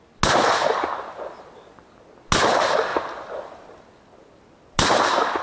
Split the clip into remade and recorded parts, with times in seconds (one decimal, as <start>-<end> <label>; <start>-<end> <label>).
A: 0.0-5.4 recorded